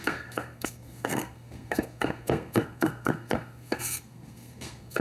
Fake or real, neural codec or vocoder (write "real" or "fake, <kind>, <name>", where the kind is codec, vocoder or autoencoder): fake, codec, SNAC